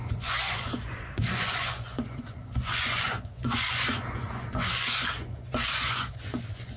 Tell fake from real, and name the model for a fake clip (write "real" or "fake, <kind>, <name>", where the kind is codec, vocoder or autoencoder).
fake, vocoder, Vocos